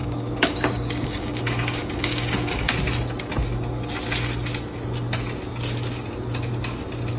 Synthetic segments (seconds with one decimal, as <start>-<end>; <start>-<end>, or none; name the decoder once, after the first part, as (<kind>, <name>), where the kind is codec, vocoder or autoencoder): 0.0-2.7 (codec, DAC)